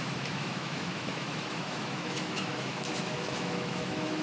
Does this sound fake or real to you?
fake